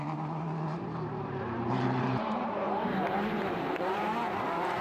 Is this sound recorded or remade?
remade